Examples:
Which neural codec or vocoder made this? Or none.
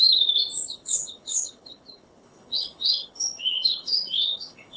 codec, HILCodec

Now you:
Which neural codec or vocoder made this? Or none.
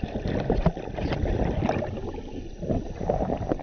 none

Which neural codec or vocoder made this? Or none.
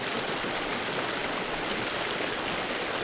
none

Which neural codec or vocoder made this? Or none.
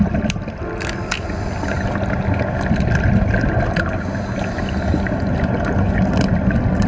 none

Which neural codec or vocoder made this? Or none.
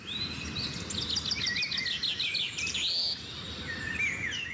none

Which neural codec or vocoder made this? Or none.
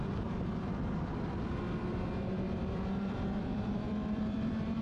vocoder, BigVGAN v2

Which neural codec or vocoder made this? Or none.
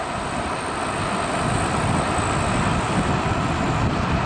none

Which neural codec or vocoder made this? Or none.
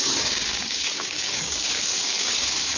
codec, DAC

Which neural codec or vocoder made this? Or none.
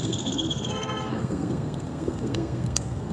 codec, SNAC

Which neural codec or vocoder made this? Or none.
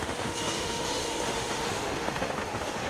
autoencoder, DAC-VAE